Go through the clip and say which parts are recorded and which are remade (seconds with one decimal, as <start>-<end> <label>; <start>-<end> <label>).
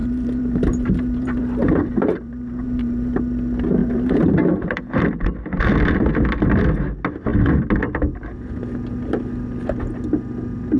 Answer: 0.0-3.2 remade; 3.2-3.8 recorded; 3.8-5.2 remade; 5.2-10.8 recorded